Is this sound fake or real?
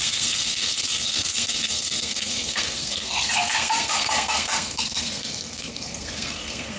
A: fake